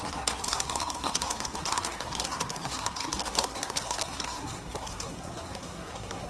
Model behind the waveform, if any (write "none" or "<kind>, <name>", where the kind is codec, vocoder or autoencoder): codec, SNAC